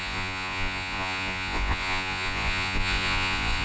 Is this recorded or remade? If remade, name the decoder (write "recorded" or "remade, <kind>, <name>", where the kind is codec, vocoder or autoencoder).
remade, vocoder, Vocos